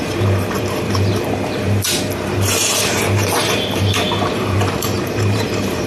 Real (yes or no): no